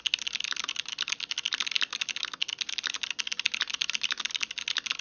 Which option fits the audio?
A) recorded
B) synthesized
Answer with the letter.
A